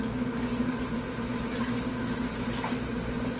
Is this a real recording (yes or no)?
yes